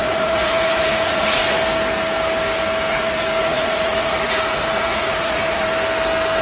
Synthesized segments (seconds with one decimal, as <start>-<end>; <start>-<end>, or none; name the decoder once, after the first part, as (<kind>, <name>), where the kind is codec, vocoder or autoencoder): 0.0-1.6 (vocoder, Vocos); 2.9-5.7